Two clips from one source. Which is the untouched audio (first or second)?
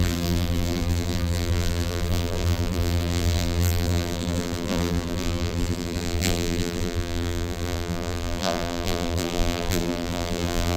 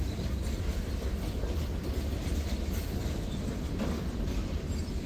second